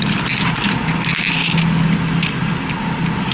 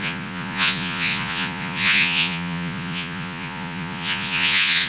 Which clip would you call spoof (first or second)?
second